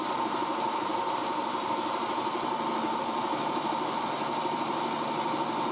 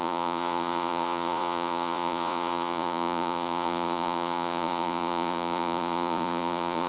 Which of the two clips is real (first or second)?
first